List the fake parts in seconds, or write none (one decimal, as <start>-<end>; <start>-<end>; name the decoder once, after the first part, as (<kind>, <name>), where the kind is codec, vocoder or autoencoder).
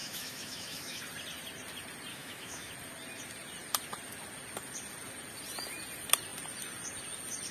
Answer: 0.0-1.0 (autoencoder, DAC-VAE); 2.1-2.7